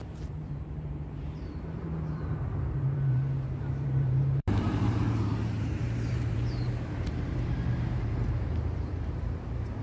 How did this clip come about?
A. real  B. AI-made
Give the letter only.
B